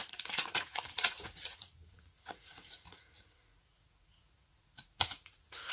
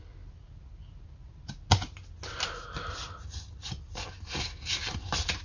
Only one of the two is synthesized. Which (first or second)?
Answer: first